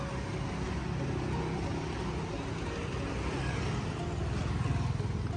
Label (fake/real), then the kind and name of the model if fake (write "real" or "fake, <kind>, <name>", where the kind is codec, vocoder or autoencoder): real